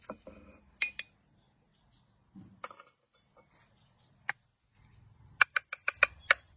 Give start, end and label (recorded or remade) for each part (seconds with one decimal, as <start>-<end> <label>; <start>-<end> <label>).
0.0-1.7 recorded; 1.7-5.2 remade; 5.2-6.6 recorded